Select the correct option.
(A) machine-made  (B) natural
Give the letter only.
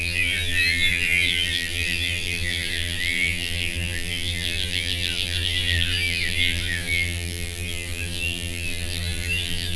A